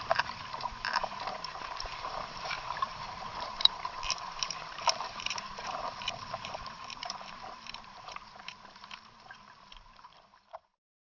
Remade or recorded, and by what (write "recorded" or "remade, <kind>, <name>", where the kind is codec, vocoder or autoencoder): remade, vocoder, BigVGAN v2